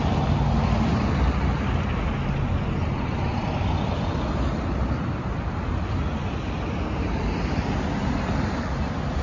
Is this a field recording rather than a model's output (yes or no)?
yes